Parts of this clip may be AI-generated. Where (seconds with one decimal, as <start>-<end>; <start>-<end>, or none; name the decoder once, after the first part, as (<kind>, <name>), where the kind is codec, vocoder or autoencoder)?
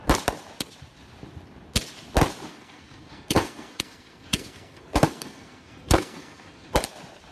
2.5-6.7 (codec, SNAC)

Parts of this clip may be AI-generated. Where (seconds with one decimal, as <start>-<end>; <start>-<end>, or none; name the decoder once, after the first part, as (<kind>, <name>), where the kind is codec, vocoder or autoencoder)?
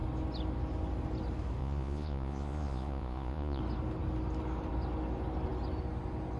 1.6-3.6 (vocoder, Vocos)